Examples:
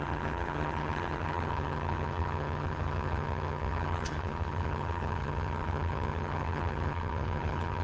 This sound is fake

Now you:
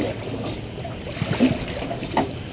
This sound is real